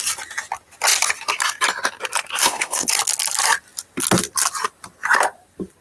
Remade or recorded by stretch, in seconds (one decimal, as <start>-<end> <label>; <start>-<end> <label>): 0.0-2.4 recorded; 2.4-2.9 remade; 2.9-5.8 recorded